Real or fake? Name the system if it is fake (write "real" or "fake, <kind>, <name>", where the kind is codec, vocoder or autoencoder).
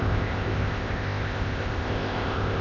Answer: fake, codec, ZipCodec